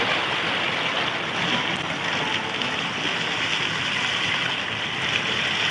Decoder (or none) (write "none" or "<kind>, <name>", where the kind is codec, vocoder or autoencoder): none